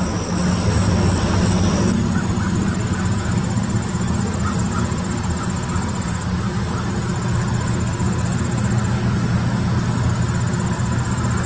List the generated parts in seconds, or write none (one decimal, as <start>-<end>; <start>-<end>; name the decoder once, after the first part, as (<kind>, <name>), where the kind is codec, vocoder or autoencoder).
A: none